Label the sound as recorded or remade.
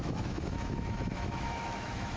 remade